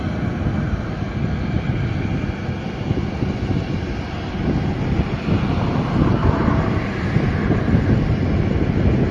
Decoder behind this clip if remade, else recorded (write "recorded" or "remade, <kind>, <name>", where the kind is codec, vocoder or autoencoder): recorded